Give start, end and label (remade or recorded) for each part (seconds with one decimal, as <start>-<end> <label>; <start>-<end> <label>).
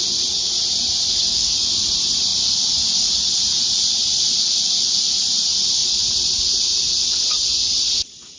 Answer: 0.0-1.2 recorded; 1.2-1.7 remade; 1.7-8.4 recorded